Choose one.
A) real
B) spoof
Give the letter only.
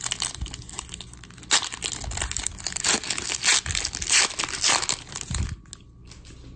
A